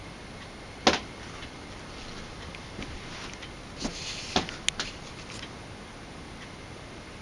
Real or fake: real